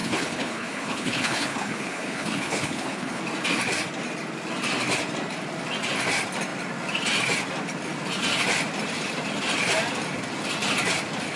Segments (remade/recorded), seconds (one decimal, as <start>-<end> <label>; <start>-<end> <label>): 0.0-3.2 remade; 3.2-11.4 recorded